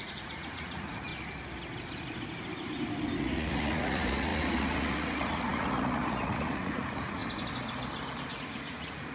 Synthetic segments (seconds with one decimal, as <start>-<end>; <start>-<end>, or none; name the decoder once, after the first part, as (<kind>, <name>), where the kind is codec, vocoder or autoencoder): 0.0-1.1 (vocoder, Vocos); 3.2-7.2; 8.3-9.1